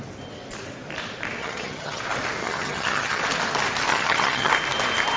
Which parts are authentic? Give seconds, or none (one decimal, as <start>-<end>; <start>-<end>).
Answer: 0.0-1.4; 2.0-2.4; 3.2-3.9; 4.5-5.2